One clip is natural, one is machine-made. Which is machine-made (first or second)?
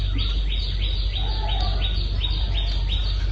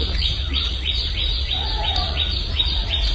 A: second